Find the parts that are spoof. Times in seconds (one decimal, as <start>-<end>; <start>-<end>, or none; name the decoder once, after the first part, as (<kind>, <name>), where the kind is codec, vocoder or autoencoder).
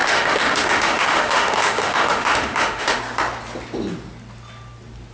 0.0-3.0 (autoencoder, DAC-VAE)